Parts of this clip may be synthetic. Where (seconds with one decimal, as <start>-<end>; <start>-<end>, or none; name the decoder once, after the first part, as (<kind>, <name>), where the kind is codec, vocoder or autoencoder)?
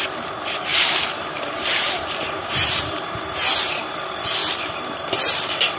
0.7-4.0 (vocoder, BigVGAN v2); 4.4-5.1